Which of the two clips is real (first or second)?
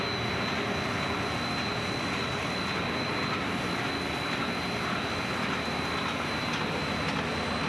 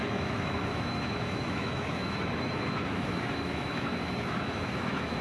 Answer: first